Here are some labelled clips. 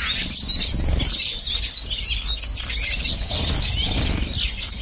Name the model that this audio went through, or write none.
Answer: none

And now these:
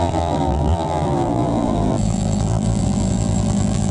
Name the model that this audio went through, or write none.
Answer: vocoder, BigVGAN v2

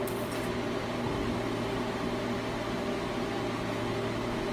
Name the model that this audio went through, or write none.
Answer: none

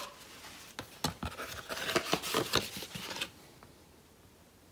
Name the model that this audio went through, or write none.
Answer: none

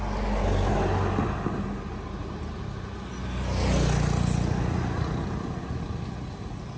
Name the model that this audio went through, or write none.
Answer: none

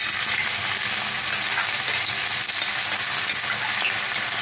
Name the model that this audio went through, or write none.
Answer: none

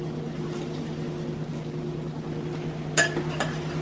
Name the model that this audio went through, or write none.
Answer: none